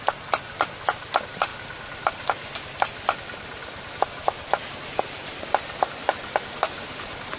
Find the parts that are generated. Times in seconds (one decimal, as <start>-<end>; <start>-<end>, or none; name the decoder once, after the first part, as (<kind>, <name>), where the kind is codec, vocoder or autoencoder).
none